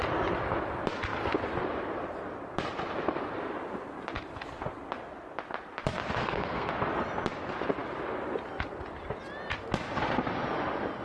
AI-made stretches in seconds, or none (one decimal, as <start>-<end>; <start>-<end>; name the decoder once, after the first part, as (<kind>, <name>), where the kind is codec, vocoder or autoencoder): 6.2-6.7 (codec, SNAC)